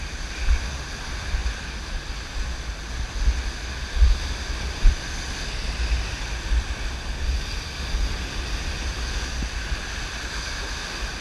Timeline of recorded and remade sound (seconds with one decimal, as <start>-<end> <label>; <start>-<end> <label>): 0.0-11.2 recorded